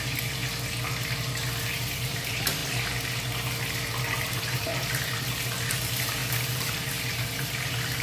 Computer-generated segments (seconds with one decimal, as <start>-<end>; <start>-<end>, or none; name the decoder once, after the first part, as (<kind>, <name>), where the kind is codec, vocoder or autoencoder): 0.0-0.4 (vocoder, BigVGAN v2); 1.6-2.6; 4.2-4.7; 5.7-8.0